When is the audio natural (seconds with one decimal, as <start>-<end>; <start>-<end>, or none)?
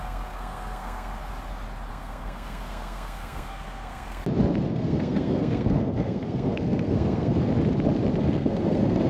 1.3-1.9; 4.2-4.7; 7.5-8.2